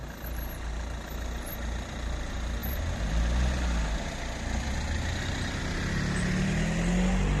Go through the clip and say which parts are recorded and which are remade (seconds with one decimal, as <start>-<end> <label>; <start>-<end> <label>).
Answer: 0.0-7.4 recorded